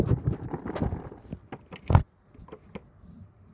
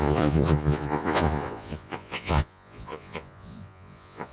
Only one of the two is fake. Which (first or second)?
second